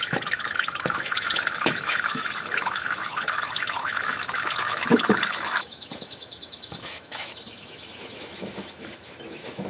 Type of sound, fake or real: fake